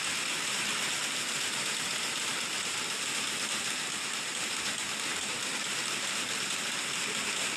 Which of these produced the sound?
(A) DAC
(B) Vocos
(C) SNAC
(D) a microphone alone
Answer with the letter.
D